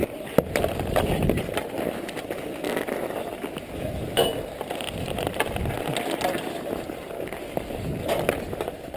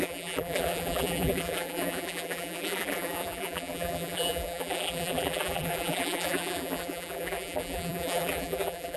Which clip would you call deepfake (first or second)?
second